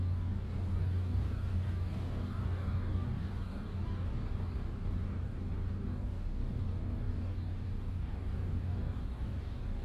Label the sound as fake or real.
fake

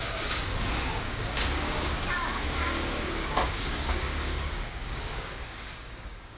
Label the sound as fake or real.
fake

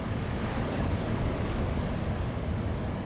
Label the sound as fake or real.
fake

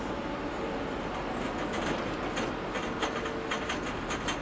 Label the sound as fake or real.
real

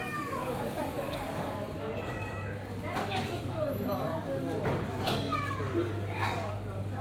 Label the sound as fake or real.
fake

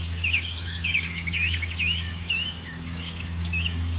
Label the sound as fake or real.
fake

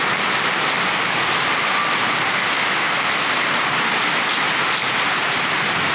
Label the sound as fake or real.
real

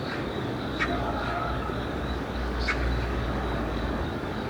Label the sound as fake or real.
fake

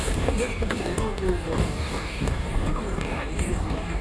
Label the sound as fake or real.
fake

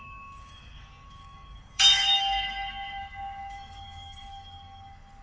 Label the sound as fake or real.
fake